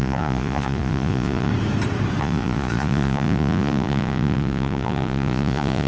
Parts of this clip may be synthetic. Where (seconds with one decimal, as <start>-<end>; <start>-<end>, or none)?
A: 0.0-1.5; 2.2-5.9